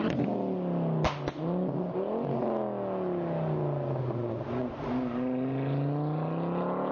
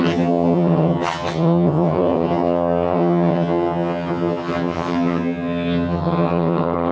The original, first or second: first